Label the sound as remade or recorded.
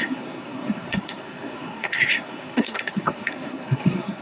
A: remade